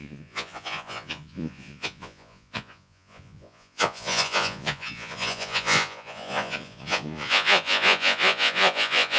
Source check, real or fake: fake